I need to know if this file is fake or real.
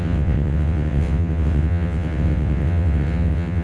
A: fake